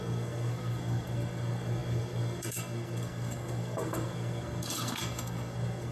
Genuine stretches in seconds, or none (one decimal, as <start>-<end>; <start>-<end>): none